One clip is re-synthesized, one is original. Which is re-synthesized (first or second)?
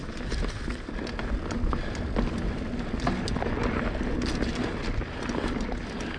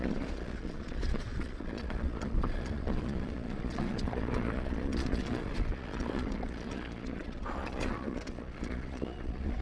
second